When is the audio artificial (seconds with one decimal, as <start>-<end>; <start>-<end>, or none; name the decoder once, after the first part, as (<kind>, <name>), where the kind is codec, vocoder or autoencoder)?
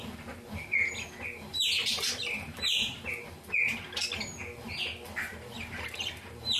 1.5-3.1 (vocoder, BigVGAN v2); 5.3-6.6